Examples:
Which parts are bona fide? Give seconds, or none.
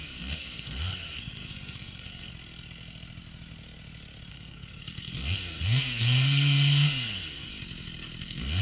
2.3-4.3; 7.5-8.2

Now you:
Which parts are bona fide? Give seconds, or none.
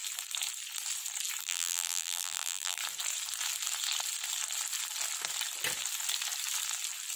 0.0-1.4; 2.8-7.2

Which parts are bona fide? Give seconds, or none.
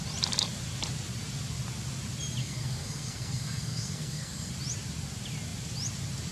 0.0-2.4; 4.5-6.3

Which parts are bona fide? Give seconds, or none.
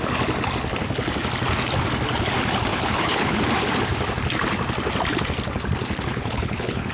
0.0-2.7; 3.4-6.1